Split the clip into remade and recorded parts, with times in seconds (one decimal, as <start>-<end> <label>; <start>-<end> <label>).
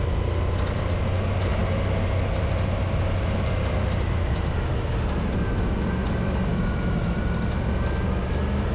0.0-8.7 recorded